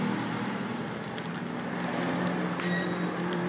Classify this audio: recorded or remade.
recorded